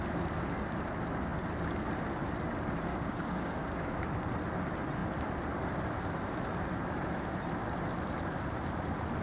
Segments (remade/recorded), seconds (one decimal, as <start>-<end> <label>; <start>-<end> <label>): 0.0-2.9 recorded; 2.9-4.2 remade; 4.2-9.2 recorded